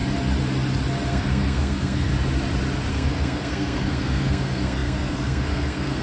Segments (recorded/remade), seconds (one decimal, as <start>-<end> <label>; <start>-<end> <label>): 0.0-1.1 recorded; 1.1-2.1 remade; 2.1-2.9 recorded; 2.9-6.0 remade